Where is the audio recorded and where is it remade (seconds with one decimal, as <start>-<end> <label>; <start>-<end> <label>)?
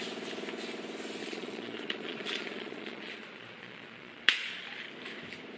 0.0-1.2 recorded; 1.2-4.6 remade; 4.6-5.6 recorded